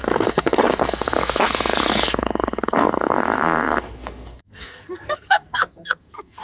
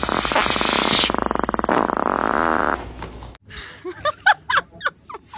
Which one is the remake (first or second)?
first